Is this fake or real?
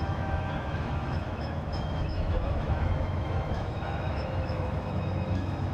fake